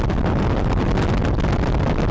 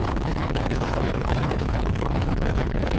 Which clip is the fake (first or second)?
second